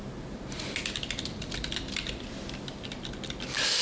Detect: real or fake real